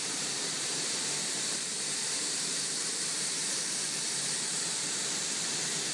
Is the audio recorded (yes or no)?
no